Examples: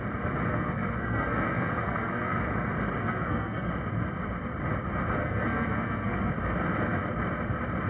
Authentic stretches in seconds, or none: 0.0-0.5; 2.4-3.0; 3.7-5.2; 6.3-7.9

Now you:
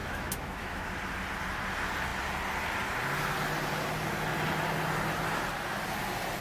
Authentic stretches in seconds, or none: 0.9-6.4

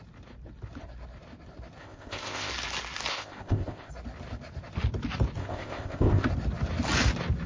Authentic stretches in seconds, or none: 0.0-1.8; 2.5-3.1; 3.9-5.4; 6.3-7.5

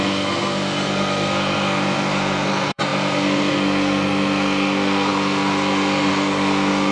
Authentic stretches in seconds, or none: none

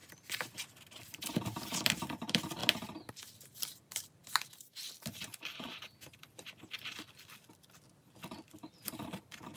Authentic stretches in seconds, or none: 0.0-1.0; 2.6-3.1

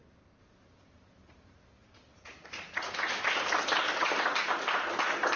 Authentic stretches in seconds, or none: 0.0-2.1; 3.1-5.4

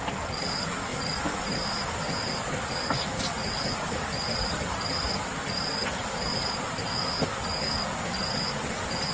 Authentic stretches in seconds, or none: 0.0-9.1

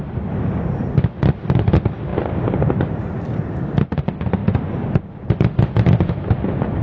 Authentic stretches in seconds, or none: 0.0-2.1; 4.0-6.8